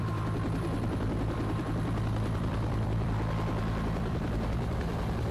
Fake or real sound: fake